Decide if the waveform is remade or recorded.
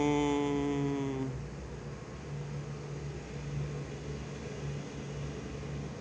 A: recorded